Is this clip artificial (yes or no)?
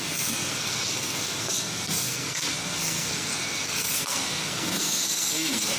yes